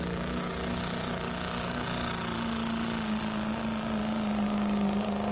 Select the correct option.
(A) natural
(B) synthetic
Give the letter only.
A